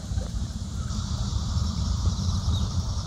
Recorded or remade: remade